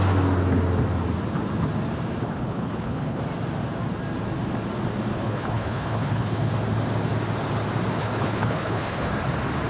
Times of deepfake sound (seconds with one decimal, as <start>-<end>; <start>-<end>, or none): 2.2-3.2; 5.1-6.5; 8.0-9.1